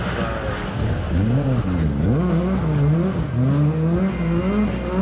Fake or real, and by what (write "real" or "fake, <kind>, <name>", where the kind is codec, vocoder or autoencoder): real